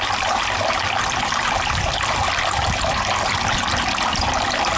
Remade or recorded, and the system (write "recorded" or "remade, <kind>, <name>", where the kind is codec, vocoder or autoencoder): remade, vocoder, BigVGAN v2